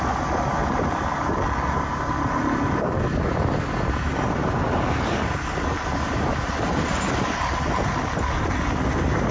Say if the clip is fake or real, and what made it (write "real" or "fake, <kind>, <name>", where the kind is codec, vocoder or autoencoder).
real